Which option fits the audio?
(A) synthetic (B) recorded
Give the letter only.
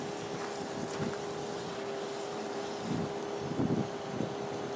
B